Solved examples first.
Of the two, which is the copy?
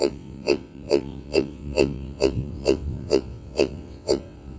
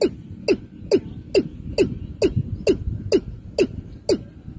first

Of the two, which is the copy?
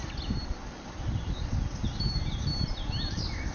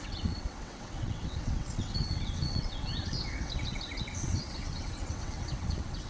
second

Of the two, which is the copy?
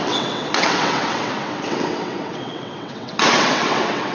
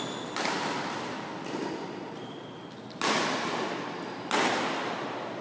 first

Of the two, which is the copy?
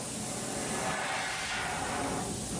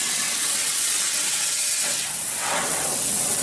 second